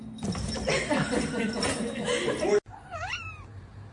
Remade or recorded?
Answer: recorded